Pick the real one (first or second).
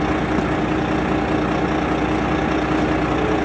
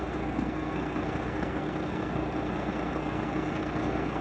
first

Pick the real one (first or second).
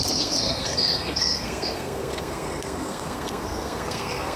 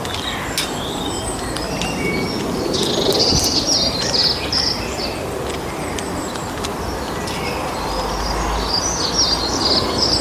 second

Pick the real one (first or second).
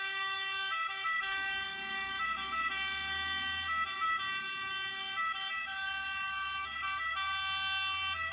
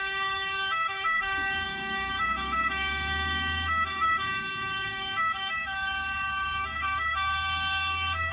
first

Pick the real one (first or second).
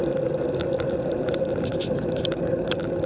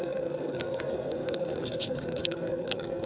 first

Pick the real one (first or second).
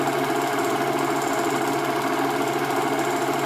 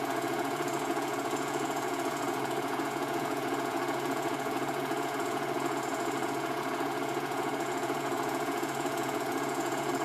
first